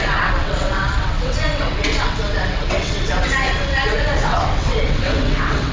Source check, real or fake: fake